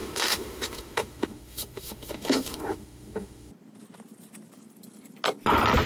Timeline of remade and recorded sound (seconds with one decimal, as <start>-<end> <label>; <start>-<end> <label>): 0.0-3.5 remade; 3.5-5.9 recorded